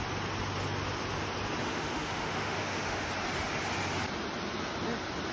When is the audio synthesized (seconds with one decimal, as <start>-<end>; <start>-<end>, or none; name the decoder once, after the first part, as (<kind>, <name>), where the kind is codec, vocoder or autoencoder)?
1.6-3.1 (autoencoder, DAC-VAE)